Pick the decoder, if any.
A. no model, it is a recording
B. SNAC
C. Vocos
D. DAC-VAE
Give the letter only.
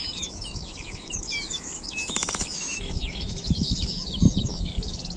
D